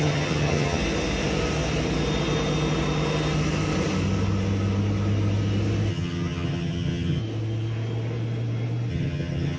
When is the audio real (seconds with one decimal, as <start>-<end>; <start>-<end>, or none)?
0.8-5.9; 7.2-8.9